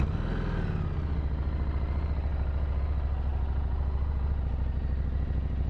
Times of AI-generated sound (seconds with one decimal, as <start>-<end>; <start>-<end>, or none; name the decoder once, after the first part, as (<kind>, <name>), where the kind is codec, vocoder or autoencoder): 3.3-4.5 (vocoder, BigVGAN v2)